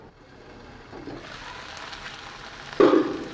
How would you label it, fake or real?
real